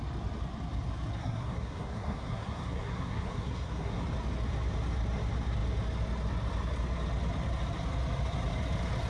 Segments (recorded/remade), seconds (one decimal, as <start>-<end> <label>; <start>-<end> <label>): 0.0-1.2 recorded; 1.2-4.0 remade; 4.0-9.1 recorded

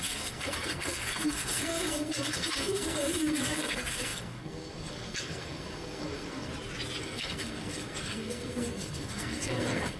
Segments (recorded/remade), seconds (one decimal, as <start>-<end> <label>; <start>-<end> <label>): 0.0-6.5 remade; 6.5-7.0 recorded; 7.0-10.0 remade